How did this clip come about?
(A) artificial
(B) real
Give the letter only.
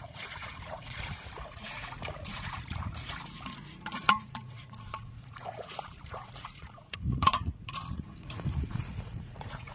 A